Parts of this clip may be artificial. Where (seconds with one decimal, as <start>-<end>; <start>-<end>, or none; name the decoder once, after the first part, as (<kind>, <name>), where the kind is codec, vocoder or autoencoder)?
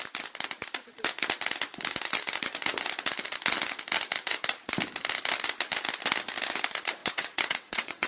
7.0-8.1 (vocoder, WaveNeXt)